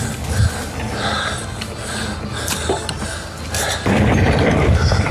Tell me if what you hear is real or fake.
real